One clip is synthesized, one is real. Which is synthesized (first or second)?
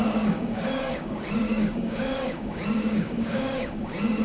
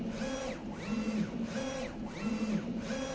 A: first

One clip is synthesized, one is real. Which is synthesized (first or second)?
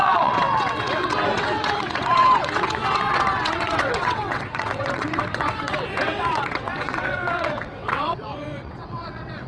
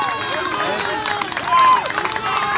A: first